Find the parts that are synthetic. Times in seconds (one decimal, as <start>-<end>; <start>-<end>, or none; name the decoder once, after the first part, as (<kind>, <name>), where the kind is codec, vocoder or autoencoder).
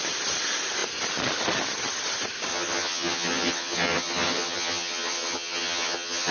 2.5-6.3 (vocoder, HiFi-GAN)